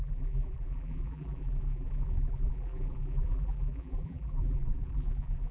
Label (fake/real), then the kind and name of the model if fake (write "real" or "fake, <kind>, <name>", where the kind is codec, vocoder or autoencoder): fake, vocoder, BigVGAN v2